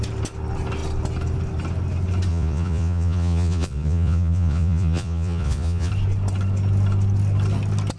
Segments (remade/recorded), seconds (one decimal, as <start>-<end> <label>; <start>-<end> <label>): 0.0-2.3 recorded; 2.3-5.9 remade; 5.9-8.0 recorded